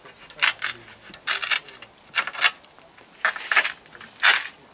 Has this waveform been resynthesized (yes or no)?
no